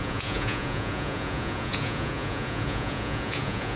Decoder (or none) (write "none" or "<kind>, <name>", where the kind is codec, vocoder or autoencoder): vocoder, Vocos